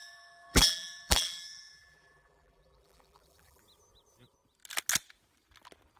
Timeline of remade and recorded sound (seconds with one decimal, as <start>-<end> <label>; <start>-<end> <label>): 0.0-3.6 remade; 3.6-6.0 recorded